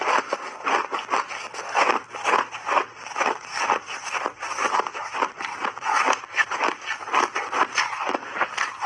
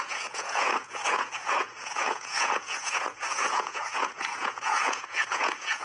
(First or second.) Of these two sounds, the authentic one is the first